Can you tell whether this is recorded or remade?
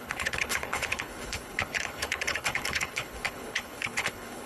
remade